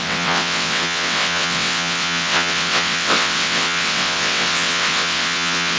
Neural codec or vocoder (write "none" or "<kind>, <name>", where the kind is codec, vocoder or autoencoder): vocoder, WaveNeXt